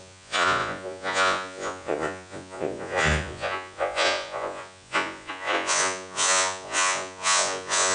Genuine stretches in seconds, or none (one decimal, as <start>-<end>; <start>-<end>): none